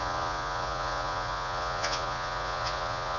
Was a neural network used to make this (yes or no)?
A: yes